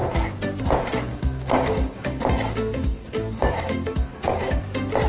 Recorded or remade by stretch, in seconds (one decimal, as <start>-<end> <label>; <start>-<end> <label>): 0.0-1.1 recorded; 1.1-2.2 remade; 2.2-3.0 recorded; 3.0-4.6 remade; 4.6-5.1 recorded

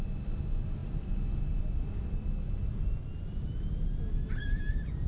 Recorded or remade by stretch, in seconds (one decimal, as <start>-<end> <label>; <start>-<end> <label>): 0.0-5.1 recorded

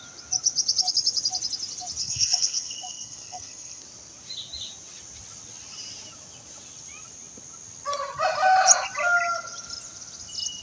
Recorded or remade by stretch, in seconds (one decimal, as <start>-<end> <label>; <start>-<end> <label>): 0.0-2.0 recorded; 2.0-3.8 remade; 3.8-10.6 recorded

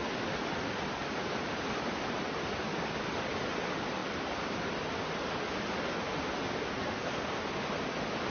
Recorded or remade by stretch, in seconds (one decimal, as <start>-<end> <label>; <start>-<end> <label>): 0.0-6.8 recorded; 6.8-7.4 remade; 7.4-8.3 recorded

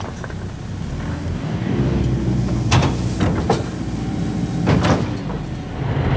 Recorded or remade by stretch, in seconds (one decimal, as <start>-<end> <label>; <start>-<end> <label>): 0.0-1.1 recorded; 1.1-2.0 remade; 2.0-6.2 recorded

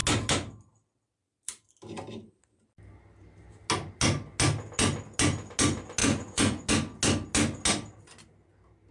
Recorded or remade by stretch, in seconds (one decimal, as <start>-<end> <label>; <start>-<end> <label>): 0.0-6.0 recorded; 6.0-6.7 remade; 6.7-8.9 recorded

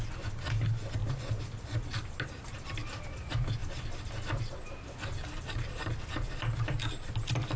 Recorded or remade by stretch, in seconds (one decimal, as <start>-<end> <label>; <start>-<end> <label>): 0.0-5.2 recorded; 5.2-6.1 remade; 6.1-7.6 recorded